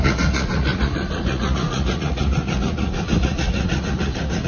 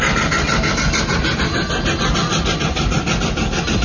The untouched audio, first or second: second